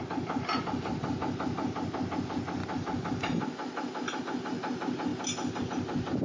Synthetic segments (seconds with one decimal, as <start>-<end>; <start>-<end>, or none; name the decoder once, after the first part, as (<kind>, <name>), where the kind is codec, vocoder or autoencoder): none